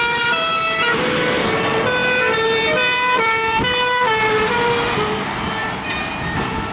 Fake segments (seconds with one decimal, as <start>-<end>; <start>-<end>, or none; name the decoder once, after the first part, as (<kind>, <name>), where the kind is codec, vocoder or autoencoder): 2.0-4.1 (vocoder, BigVGAN v2); 5.6-6.1